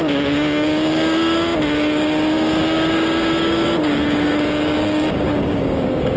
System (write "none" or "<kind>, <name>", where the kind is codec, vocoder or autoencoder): codec, DAC